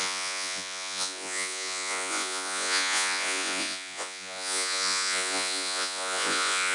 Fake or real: fake